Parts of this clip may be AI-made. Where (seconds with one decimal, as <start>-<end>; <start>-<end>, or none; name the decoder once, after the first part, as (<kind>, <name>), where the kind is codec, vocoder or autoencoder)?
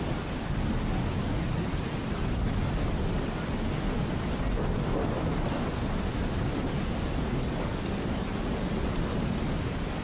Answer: 7.7-8.6 (vocoder, BigVGAN v2)